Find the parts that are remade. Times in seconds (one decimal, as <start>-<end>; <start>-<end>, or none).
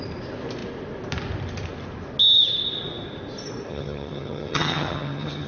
3.7-5.5